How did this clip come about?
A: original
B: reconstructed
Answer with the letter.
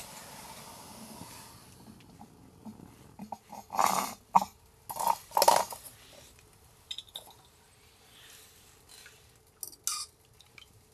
A